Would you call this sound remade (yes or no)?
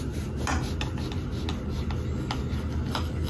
no